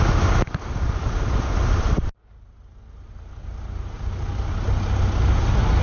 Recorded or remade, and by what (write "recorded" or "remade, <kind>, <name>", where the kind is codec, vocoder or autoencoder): recorded